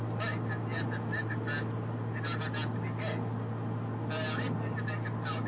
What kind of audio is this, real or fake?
real